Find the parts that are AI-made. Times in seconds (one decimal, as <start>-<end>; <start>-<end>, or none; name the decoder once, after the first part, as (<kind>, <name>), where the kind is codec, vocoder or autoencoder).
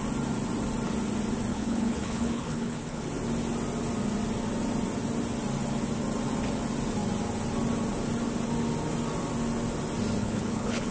1.5-3.0 (codec, HILCodec); 10.2-10.9